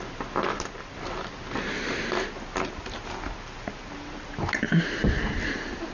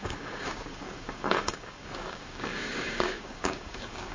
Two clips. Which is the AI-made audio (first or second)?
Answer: second